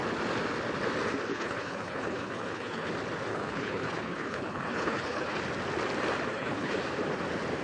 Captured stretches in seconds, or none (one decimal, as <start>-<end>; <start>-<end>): 0.0-1.3; 2.9-3.3; 5.4-6.3; 6.8-7.6